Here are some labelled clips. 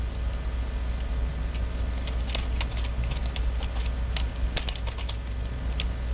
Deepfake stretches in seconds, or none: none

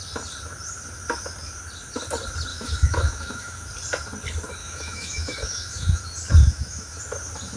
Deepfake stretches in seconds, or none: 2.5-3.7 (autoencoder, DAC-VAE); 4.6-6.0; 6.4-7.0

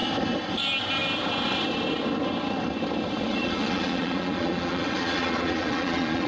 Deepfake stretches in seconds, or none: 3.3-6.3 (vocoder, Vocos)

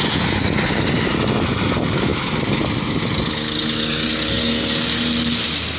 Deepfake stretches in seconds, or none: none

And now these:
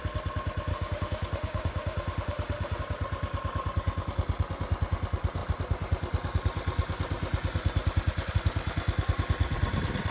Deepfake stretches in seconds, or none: 0.7-2.8 (autoencoder, DAC-VAE)

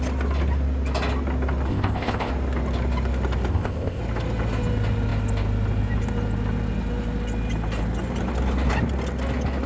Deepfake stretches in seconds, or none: 1.7-2.3 (codec, ZipCodec); 3.5-4.0